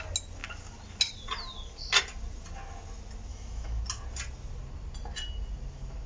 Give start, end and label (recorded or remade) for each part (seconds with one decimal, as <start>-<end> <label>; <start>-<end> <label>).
0.0-3.3 recorded; 3.3-3.8 remade; 3.8-6.1 recorded